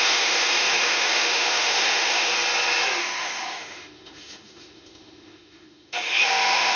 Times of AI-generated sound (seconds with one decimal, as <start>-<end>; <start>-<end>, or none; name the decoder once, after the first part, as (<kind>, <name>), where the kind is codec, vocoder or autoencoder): 0.0-2.3 (autoencoder, DAC-VAE); 3.0-6.8